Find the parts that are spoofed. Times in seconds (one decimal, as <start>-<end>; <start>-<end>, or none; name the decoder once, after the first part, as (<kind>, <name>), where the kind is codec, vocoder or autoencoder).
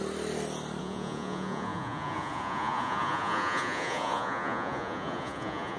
0.8-5.8 (vocoder, Vocos)